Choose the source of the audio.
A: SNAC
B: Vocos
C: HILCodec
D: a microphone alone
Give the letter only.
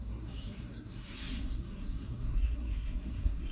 A